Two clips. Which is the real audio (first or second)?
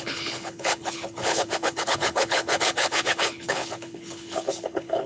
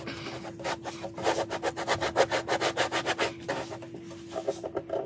second